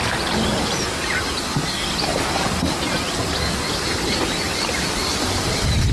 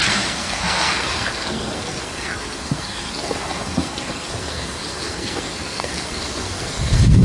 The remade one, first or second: second